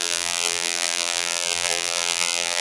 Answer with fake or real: fake